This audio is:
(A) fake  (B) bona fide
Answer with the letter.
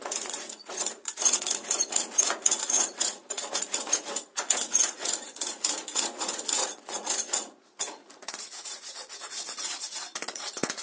A